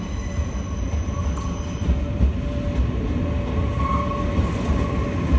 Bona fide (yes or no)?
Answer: yes